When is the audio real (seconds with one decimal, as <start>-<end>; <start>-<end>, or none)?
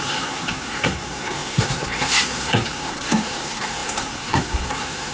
none